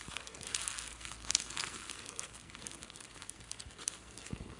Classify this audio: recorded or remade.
remade